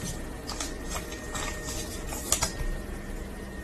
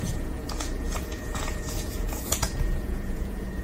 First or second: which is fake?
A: second